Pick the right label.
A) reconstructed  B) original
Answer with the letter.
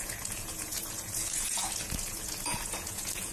A